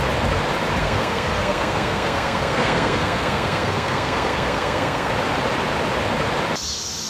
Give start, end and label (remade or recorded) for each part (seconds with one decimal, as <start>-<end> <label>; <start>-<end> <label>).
0.0-0.8 recorded; 0.8-5.1 remade; 5.1-7.1 recorded